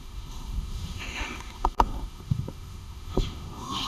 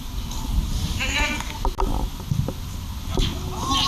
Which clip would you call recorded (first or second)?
second